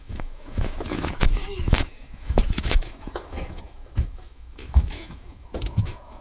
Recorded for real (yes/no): no